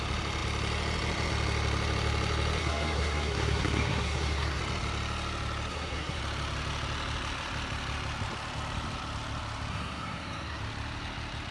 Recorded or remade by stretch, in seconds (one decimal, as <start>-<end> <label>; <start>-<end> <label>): 0.0-2.6 recorded; 2.6-4.6 remade; 4.6-5.7 recorded; 5.7-6.2 remade; 6.2-9.7 recorded; 9.7-10.6 remade; 10.6-11.5 recorded